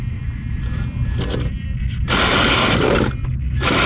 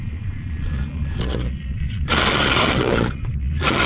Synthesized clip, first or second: second